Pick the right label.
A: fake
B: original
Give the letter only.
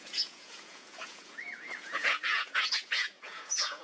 A